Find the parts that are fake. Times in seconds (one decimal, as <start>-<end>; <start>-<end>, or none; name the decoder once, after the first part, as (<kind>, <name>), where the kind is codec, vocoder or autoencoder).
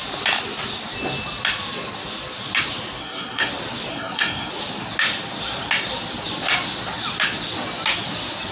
3.0-3.5 (codec, SNAC); 3.9-4.5